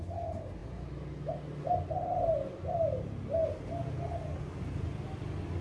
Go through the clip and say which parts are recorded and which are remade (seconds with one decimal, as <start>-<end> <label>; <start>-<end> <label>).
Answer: 0.0-5.6 recorded

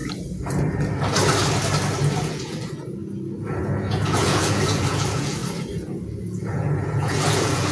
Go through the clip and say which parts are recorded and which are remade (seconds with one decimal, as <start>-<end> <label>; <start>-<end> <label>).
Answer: 0.0-2.3 recorded; 2.3-3.0 remade; 3.0-3.6 recorded; 3.6-5.4 remade; 5.4-6.2 recorded; 6.2-7.7 remade

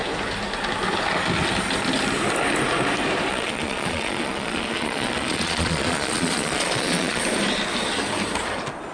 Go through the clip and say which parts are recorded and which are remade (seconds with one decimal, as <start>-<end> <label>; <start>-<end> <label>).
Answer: 0.0-3.3 recorded; 3.3-7.2 remade; 7.2-8.9 recorded

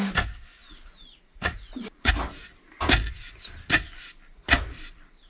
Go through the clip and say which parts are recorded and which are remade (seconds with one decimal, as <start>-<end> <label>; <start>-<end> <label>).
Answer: 0.0-0.6 recorded; 0.6-2.1 remade; 2.1-5.3 recorded

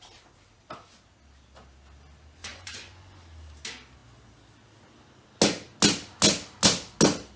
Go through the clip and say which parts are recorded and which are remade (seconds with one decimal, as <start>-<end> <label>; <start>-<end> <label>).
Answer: 0.0-2.4 recorded; 2.4-3.2 remade; 3.2-7.4 recorded

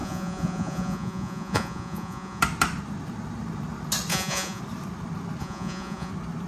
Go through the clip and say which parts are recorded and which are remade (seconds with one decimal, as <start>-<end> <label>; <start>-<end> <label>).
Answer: 0.0-2.4 remade; 2.4-4.1 recorded; 4.1-4.6 remade; 4.6-5.4 recorded; 5.4-6.1 remade; 6.1-6.5 recorded

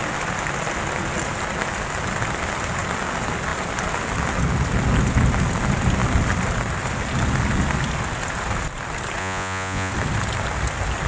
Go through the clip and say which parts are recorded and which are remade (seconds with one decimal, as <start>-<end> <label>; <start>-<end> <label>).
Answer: 0.0-9.2 recorded; 9.2-9.9 remade; 9.9-11.1 recorded

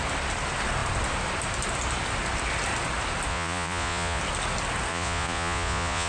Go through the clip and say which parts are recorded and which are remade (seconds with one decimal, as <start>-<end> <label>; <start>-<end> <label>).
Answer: 0.0-3.3 recorded; 3.3-4.2 remade; 4.2-4.9 recorded; 4.9-6.1 remade